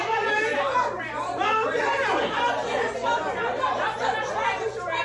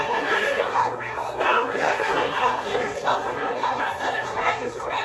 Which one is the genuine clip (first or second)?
first